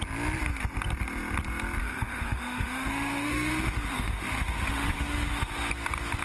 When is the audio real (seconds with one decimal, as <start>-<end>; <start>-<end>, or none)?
0.0-1.8; 5.5-6.2